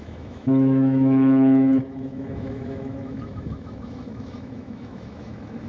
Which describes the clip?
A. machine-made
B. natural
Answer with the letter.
A